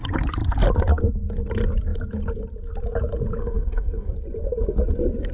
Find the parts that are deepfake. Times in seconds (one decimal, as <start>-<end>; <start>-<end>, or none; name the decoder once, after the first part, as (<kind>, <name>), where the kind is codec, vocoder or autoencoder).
3.4-4.1 (codec, SNAC)